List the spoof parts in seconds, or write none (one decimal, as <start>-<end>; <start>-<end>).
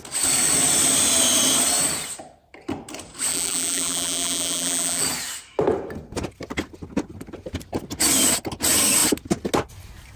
3.3-5.0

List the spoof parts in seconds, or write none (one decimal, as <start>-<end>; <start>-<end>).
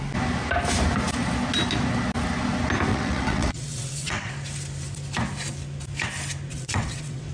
2.9-4.3; 6.5-7.3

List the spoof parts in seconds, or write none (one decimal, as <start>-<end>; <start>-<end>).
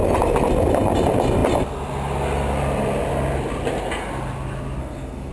4.8-5.3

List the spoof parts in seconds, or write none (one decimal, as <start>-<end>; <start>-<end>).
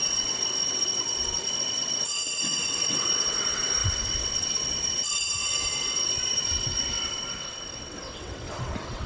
0.0-9.1